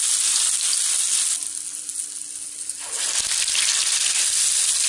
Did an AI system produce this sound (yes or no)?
no